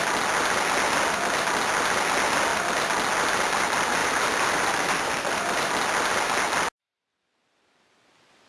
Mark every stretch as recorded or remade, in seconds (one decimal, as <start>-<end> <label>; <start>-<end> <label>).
0.0-4.0 recorded; 4.0-5.7 remade; 5.7-8.5 recorded